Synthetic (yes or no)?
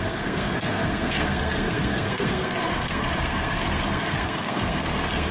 yes